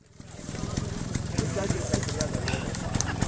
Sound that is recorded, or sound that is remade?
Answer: remade